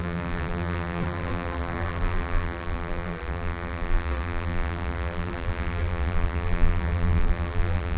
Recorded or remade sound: remade